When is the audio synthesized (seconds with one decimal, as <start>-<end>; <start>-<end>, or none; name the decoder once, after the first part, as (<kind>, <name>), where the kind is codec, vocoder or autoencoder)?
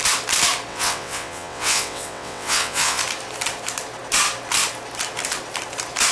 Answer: 0.7-3.0 (vocoder, WaveNeXt)